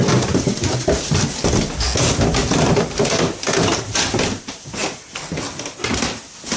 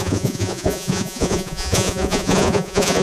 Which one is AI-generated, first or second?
second